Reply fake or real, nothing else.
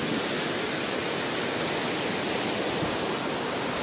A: real